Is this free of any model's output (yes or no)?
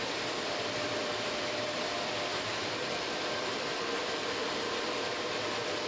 no